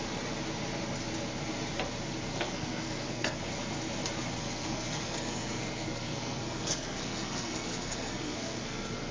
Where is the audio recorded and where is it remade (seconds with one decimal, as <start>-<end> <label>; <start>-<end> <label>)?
0.0-2.3 recorded; 2.3-3.4 remade; 3.4-4.4 recorded; 4.4-9.1 remade